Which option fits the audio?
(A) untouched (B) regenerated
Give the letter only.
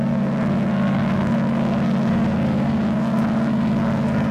B